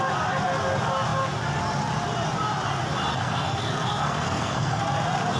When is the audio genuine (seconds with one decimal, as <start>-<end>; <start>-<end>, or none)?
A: 0.0-3.1; 4.8-5.4